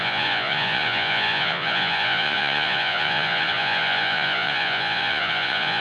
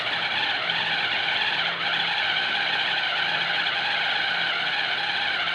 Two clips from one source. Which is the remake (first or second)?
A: first